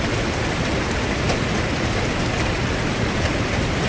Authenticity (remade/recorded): recorded